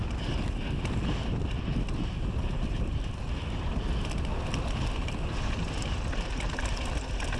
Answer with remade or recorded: recorded